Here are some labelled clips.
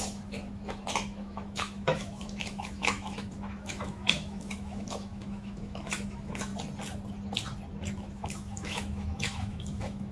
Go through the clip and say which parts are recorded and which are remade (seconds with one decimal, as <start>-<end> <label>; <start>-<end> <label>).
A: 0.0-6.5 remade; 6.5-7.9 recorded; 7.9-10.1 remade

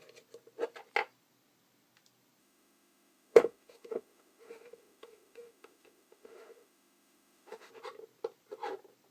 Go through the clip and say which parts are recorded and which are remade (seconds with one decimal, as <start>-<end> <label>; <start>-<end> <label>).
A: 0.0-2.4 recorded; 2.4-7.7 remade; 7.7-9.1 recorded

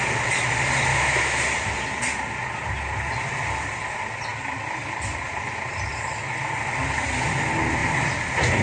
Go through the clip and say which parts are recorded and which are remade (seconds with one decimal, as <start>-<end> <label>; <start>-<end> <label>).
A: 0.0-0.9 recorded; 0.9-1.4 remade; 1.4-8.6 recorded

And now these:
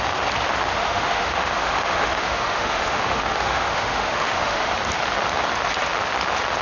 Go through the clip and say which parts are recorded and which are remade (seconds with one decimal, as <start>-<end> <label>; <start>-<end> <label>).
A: 0.0-0.7 recorded; 0.7-4.7 remade; 4.7-6.6 recorded